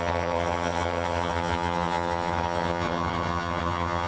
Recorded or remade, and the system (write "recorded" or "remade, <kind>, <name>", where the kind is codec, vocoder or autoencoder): remade, vocoder, HiFi-GAN